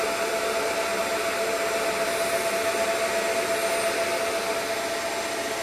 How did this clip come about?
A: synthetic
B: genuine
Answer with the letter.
B